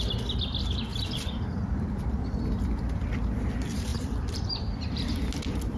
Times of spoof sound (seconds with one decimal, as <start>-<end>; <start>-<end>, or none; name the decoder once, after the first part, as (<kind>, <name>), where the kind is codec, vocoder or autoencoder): 0.9-2.4 (vocoder, BigVGAN v2); 3.9-5.2